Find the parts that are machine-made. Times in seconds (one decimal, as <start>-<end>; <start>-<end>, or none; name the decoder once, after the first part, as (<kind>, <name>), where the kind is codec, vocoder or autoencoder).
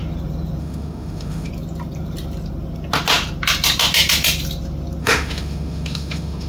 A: 0.6-1.5 (autoencoder, DAC-VAE); 5.0-6.5